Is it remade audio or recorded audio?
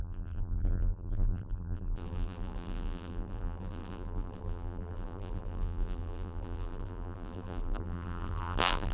remade